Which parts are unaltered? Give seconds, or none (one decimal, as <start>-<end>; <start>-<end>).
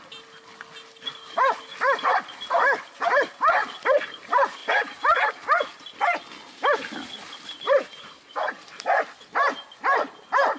0.0-10.6